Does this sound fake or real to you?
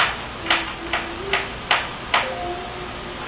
real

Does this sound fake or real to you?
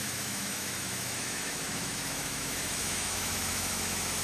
fake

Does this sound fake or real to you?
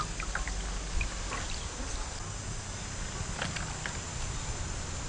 real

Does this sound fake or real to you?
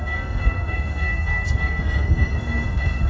fake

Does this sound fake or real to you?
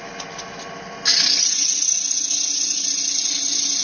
real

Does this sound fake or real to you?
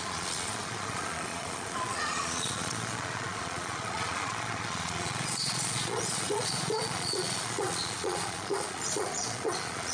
fake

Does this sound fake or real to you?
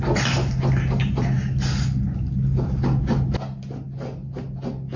real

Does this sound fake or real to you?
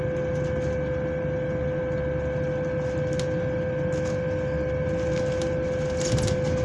real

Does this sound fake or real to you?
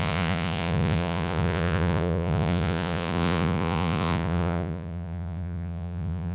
fake